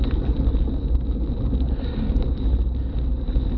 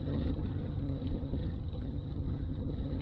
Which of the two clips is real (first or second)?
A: first